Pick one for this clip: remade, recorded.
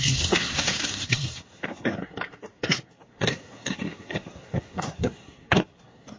remade